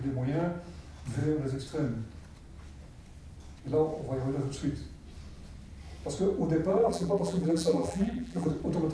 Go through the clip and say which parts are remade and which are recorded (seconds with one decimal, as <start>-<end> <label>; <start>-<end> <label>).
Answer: 0.0-6.7 recorded; 6.7-8.5 remade; 8.5-8.9 recorded